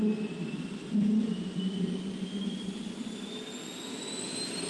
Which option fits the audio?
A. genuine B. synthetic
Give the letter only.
B